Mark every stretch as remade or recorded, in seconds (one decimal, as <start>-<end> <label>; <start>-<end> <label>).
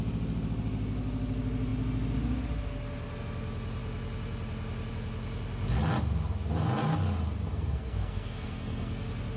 0.0-7.5 recorded; 7.5-9.0 remade; 9.0-9.4 recorded